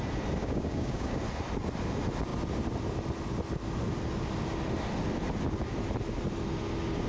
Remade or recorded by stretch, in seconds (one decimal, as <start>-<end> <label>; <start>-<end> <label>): 0.0-0.4 recorded; 0.4-1.2 remade; 1.2-7.1 recorded